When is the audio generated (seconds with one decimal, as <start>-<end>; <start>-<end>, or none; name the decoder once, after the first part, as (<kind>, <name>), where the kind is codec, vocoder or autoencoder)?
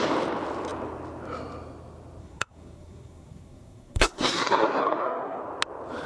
2.2-5.4 (codec, SNAC)